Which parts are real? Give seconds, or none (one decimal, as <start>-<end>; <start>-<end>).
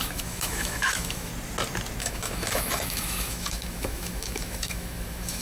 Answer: 1.3-2.0